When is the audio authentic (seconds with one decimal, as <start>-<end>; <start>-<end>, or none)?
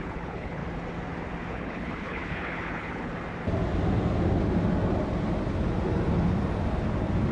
0.6-1.5; 3.1-7.3